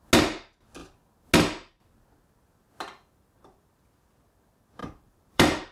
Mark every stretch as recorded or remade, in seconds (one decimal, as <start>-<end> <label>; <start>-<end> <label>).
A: 0.0-4.8 recorded; 4.8-5.7 remade